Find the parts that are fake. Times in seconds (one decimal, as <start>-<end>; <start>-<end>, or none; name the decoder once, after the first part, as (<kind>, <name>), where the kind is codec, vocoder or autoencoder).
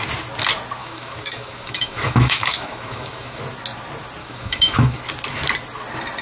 0.8-3.4 (autoencoder, DAC-VAE); 4.2-5.0